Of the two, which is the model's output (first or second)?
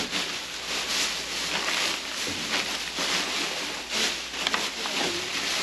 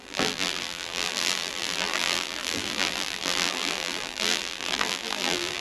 second